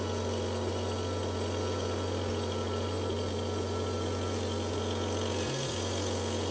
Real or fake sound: real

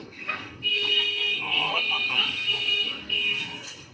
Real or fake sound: fake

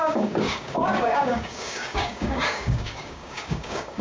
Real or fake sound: fake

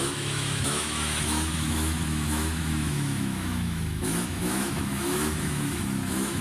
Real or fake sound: fake